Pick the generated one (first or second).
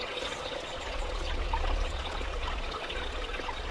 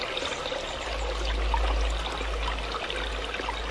first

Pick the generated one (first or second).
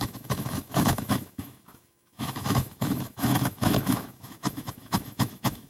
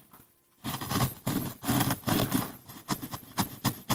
first